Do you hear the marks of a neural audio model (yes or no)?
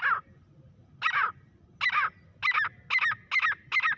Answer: no